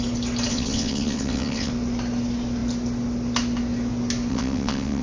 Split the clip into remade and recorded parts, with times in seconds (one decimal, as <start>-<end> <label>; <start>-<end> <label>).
0.0-0.5 recorded; 0.5-1.7 remade; 1.7-4.3 recorded; 4.3-5.0 remade